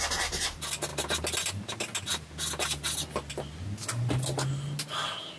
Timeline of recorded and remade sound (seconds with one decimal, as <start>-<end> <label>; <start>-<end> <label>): 0.0-5.4 recorded